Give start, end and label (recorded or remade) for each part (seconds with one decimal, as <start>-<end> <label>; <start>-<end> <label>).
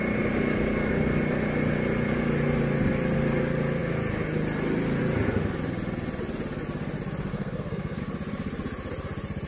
0.0-7.3 recorded; 7.3-8.0 remade; 8.0-9.5 recorded